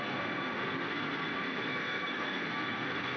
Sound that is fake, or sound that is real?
fake